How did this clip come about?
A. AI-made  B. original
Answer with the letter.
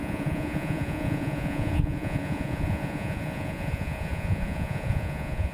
A